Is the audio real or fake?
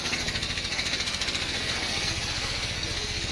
fake